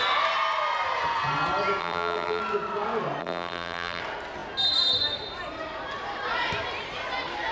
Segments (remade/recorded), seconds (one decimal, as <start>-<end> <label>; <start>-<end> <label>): 0.0-1.8 recorded; 1.8-2.4 remade; 2.4-3.2 recorded; 3.2-4.0 remade; 4.0-7.5 recorded